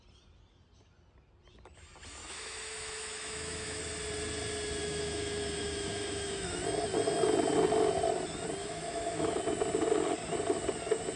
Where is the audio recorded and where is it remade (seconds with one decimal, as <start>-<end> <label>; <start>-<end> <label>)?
0.0-2.2 recorded; 2.2-3.8 remade; 3.8-4.8 recorded; 4.8-6.6 remade; 6.6-8.6 recorded; 8.6-9.4 remade; 9.4-11.2 recorded